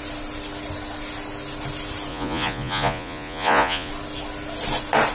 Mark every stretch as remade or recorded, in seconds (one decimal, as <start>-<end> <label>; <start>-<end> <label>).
0.0-2.1 recorded; 2.1-3.9 remade; 3.9-5.1 recorded